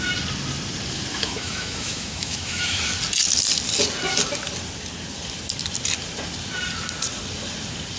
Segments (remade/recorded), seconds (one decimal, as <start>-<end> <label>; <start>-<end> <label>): 0.0-1.1 recorded; 1.1-2.8 remade; 2.8-8.0 recorded